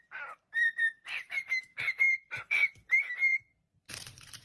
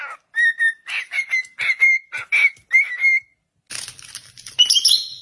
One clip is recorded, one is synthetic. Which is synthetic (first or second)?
first